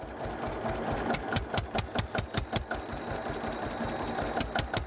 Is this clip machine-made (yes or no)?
no